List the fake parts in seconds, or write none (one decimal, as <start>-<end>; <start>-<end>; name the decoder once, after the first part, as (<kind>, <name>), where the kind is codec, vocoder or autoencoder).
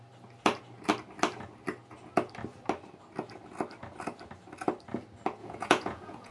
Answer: 5.4-6.3 (vocoder, Vocos)